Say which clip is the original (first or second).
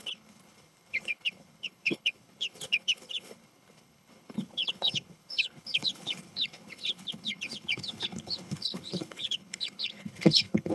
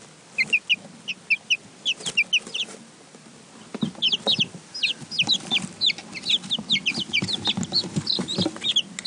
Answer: second